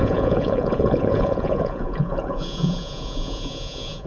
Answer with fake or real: fake